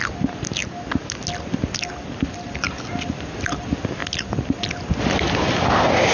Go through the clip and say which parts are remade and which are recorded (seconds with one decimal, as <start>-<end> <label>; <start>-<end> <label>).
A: 0.0-6.1 recorded